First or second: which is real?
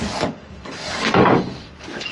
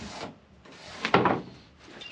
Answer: second